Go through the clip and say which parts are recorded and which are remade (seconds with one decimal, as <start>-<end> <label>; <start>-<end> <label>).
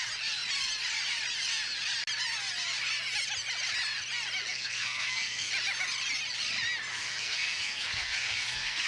0.0-4.5 recorded; 4.5-5.5 remade; 5.5-6.9 recorded; 6.9-8.9 remade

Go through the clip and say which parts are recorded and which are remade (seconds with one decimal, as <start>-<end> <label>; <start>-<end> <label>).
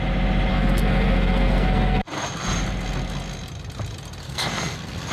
0.0-0.5 recorded; 0.5-2.0 remade; 2.0-4.2 recorded; 4.2-5.1 remade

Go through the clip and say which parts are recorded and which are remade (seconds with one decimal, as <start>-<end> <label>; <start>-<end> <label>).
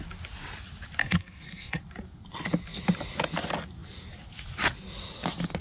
0.0-1.0 recorded; 1.0-1.8 remade; 1.8-5.6 recorded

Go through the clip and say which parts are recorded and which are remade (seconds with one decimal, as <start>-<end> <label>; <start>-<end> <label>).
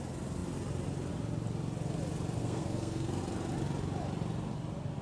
0.0-2.4 recorded; 2.4-3.2 remade; 3.2-5.0 recorded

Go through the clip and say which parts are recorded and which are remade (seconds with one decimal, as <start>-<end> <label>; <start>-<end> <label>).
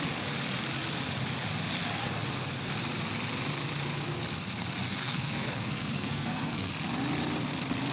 0.0-5.0 recorded; 5.0-6.7 remade; 6.7-7.9 recorded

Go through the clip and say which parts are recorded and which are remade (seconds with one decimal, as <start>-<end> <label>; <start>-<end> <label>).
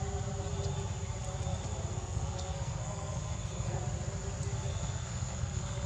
0.0-1.9 recorded; 1.9-3.8 remade; 3.8-4.7 recorded; 4.7-5.9 remade